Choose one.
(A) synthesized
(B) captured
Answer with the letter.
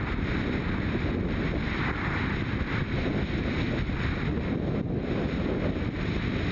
B